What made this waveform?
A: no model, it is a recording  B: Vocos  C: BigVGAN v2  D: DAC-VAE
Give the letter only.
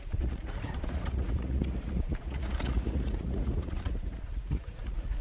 B